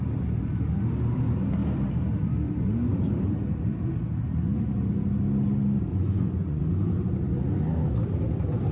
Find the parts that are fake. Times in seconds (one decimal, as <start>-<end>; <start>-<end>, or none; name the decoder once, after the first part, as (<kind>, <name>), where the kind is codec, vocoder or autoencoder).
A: 5.9-6.6 (vocoder, Vocos)